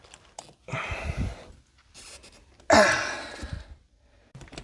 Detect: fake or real real